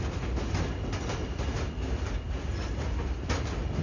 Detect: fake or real real